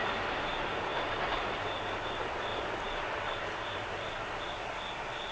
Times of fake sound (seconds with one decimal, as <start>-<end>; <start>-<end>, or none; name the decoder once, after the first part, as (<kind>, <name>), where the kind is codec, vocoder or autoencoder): 0.9-1.5 (vocoder, BigVGAN v2); 2.5-4.4